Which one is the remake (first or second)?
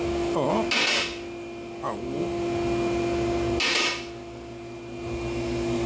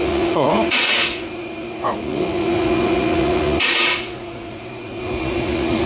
second